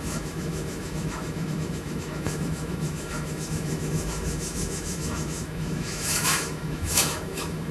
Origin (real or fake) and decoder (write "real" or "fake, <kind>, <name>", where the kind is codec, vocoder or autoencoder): fake, autoencoder, DAC-VAE